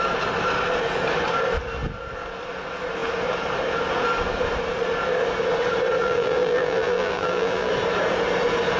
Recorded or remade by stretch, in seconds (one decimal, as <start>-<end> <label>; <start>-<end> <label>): 0.0-6.0 recorded; 6.0-7.7 remade; 7.7-8.8 recorded